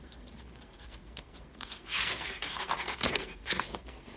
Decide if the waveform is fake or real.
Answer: fake